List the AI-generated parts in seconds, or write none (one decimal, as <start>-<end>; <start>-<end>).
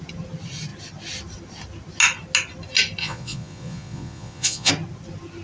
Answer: 3.0-4.7